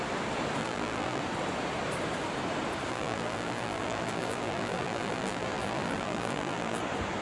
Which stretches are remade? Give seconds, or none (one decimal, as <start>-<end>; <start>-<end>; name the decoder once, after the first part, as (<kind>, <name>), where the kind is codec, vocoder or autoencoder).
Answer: 0.6-1.2 (vocoder, BigVGAN v2); 2.9-6.8